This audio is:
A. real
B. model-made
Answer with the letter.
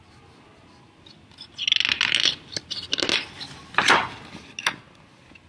A